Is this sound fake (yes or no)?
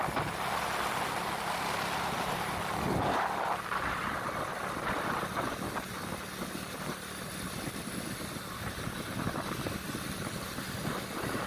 no